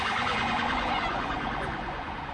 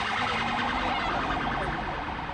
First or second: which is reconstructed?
first